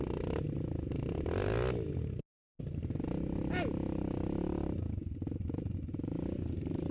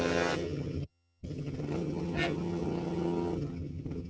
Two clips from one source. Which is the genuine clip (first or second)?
first